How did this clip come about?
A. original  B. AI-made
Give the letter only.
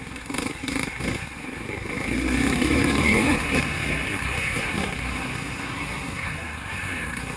B